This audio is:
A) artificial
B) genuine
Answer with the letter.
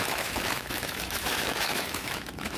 A